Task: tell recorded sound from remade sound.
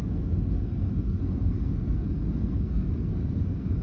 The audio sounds remade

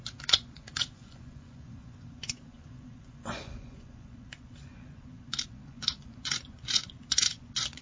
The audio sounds remade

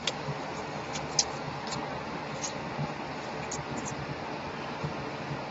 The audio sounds recorded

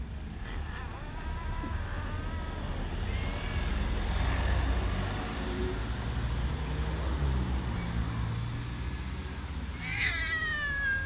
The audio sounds recorded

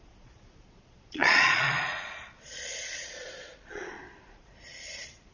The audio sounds remade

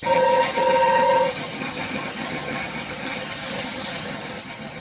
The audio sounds remade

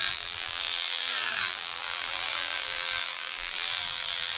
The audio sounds remade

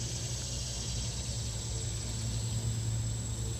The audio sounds recorded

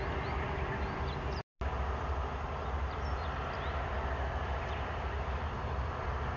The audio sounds recorded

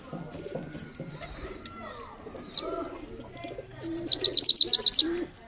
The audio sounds recorded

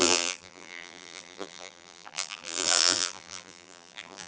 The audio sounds remade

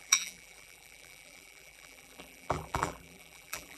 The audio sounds remade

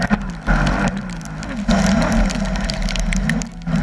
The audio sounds recorded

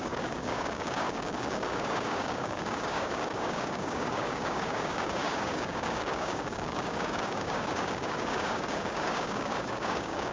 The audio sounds remade